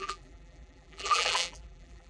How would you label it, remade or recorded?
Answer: remade